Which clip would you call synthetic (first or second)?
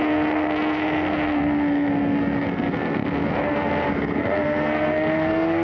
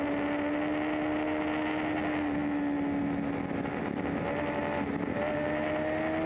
first